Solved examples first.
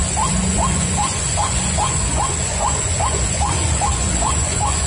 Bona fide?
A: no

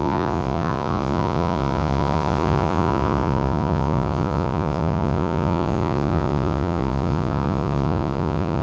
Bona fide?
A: no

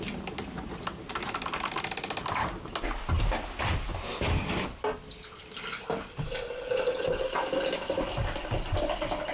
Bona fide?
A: yes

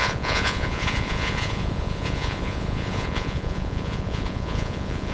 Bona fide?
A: no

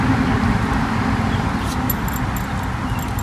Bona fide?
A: yes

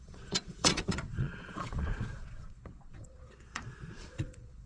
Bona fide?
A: no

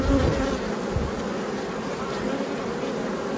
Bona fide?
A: yes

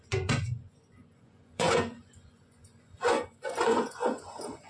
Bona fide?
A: no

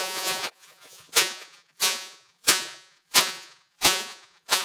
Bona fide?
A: no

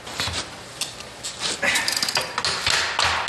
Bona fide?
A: yes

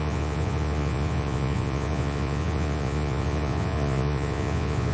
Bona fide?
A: no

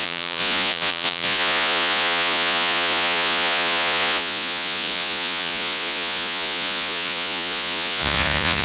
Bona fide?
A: no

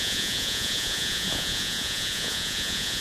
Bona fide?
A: no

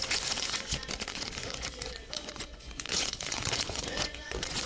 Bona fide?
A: no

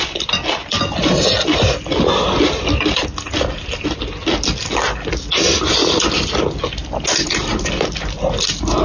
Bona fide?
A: yes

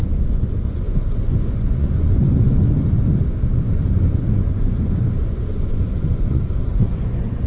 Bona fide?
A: no